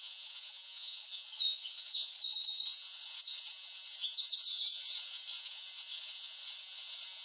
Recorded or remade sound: remade